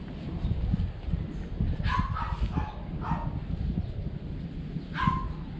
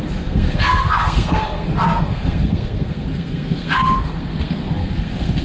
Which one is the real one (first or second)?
first